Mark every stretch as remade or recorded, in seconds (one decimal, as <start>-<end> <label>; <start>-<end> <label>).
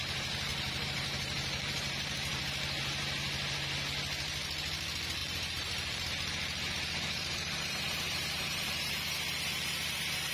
0.0-0.5 recorded; 0.5-2.4 remade; 2.4-5.2 recorded; 5.2-8.9 remade; 8.9-10.3 recorded